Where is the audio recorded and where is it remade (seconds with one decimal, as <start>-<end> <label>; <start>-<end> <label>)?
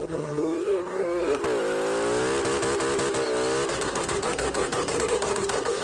0.0-1.4 remade; 1.4-3.7 recorded; 3.7-5.8 remade